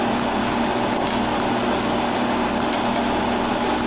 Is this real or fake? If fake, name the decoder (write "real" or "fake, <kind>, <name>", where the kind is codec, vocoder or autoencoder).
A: real